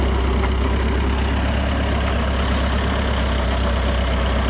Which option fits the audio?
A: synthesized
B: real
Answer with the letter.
B